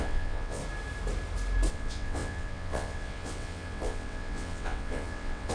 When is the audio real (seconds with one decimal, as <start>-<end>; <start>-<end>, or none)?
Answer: 0.6-1.7